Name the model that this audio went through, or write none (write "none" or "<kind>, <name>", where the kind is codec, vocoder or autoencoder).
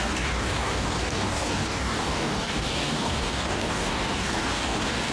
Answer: codec, DAC